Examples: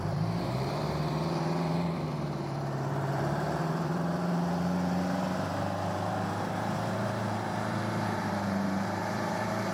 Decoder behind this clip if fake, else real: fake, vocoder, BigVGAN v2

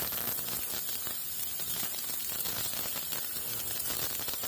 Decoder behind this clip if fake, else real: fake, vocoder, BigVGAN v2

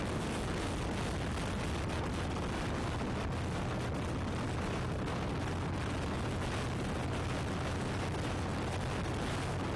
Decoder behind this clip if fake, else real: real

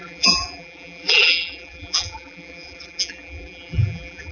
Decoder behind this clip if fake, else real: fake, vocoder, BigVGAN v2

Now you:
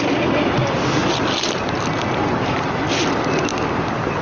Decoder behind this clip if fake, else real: real